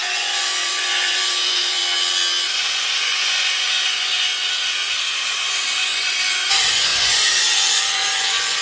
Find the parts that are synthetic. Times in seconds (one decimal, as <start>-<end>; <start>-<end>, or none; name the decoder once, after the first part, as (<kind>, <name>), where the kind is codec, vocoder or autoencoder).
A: 0.0-1.8 (vocoder, Vocos); 2.5-4.3; 5.0-8.6